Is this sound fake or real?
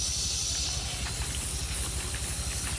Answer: real